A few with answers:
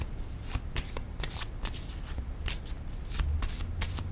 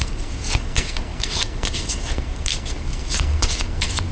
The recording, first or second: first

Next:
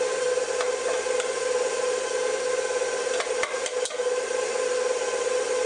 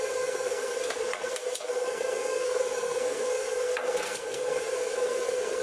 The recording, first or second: first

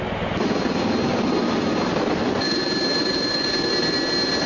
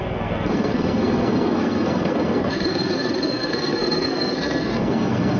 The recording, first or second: first